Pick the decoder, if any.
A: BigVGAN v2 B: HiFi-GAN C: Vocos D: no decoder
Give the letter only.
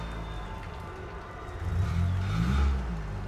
D